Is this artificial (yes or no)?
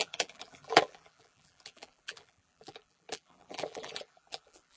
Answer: yes